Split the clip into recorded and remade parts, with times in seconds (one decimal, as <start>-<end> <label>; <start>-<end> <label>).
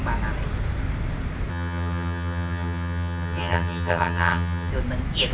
0.0-1.5 recorded; 1.5-4.7 remade; 4.7-5.3 recorded